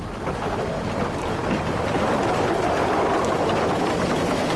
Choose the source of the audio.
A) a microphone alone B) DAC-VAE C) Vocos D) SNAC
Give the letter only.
A